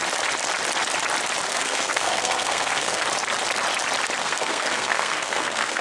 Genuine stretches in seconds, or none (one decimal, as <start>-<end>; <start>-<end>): 0.0-1.5; 3.0-4.2